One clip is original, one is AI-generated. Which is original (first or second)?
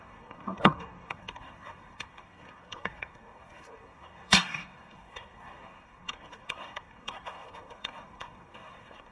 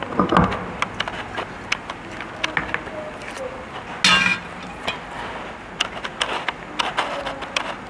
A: second